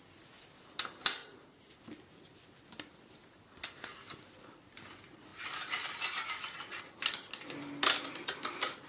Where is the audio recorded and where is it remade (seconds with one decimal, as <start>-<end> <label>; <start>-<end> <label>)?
0.0-1.2 recorded; 1.2-1.8 remade; 1.8-8.9 recorded